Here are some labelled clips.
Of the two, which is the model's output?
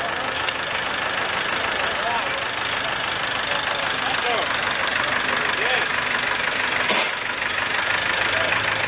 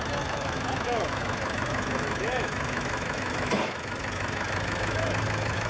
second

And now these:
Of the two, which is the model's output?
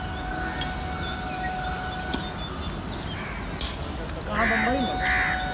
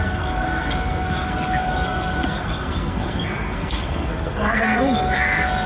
second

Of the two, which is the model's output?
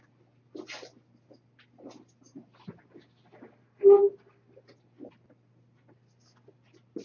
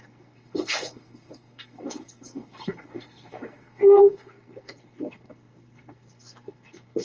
second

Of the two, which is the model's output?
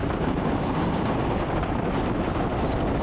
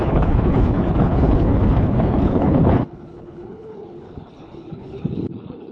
second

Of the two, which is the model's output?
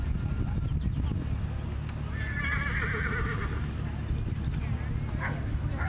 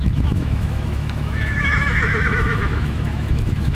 second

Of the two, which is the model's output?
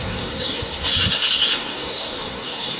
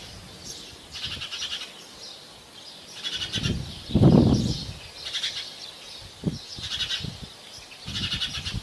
first